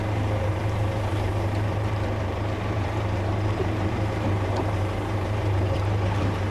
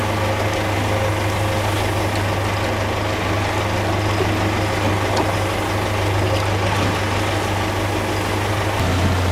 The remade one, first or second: first